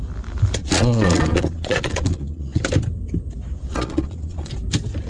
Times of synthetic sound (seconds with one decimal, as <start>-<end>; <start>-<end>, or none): 0.6-2.6; 3.7-4.5